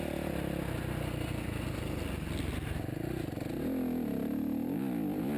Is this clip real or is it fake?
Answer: real